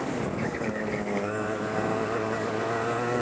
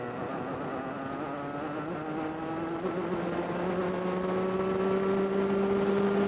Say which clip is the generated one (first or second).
first